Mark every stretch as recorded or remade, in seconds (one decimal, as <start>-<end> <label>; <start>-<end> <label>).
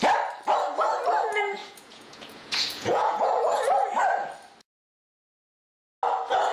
0.0-1.6 recorded; 1.6-3.6 remade; 3.6-6.5 recorded